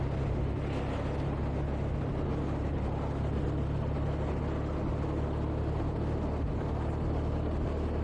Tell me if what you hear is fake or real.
real